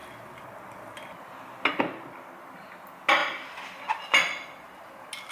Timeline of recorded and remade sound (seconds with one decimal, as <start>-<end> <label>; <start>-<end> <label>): 0.0-5.3 recorded